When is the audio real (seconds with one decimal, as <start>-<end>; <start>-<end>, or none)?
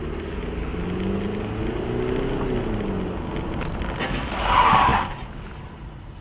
0.0-6.2